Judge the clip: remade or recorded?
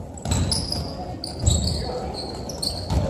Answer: recorded